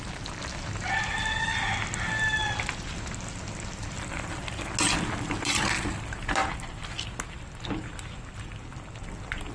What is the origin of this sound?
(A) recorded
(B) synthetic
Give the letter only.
A